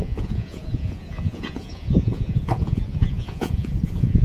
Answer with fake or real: fake